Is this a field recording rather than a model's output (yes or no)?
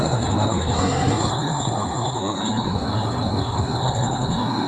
no